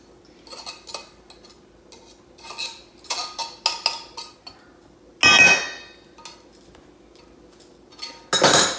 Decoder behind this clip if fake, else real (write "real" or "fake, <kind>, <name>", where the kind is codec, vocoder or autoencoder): real